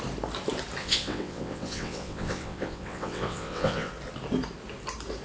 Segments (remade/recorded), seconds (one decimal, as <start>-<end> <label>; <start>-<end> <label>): 0.0-0.8 recorded; 0.8-3.9 remade; 3.9-5.2 recorded